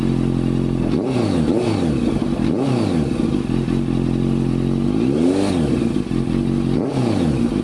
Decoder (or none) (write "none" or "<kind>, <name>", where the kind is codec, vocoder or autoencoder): none